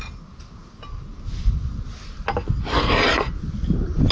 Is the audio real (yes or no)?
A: yes